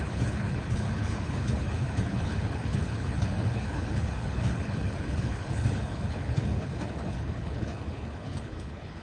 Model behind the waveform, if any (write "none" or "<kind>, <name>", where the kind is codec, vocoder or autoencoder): codec, HILCodec